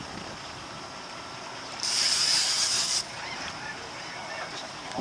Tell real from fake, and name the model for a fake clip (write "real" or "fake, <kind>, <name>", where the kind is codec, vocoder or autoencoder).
fake, vocoder, BigVGAN v2